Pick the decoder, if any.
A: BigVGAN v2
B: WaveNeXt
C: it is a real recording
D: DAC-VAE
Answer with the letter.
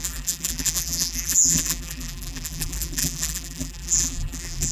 A